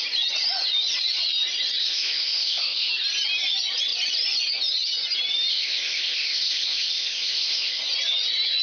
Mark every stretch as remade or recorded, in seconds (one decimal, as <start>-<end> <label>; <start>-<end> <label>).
0.0-1.8 recorded; 1.8-2.9 remade; 2.9-5.5 recorded; 5.5-7.8 remade; 7.8-8.6 recorded